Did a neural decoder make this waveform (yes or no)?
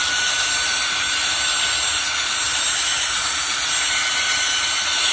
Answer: no